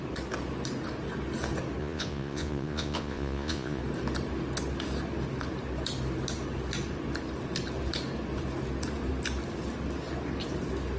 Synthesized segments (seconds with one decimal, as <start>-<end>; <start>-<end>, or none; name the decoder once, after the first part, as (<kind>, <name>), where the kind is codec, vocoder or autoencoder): 1.8-3.8 (vocoder, Vocos)